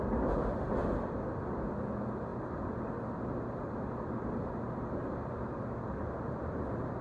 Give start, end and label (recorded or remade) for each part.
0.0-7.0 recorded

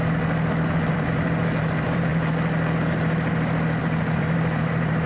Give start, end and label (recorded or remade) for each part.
0.0-0.9 recorded; 0.9-2.1 remade; 2.1-3.8 recorded; 3.8-5.1 remade

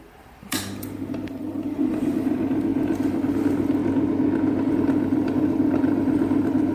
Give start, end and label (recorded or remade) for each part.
0.0-3.8 remade; 3.8-4.7 recorded; 4.7-6.7 remade

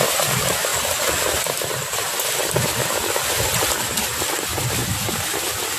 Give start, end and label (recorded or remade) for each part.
0.0-5.8 recorded